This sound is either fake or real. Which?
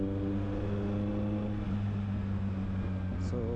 real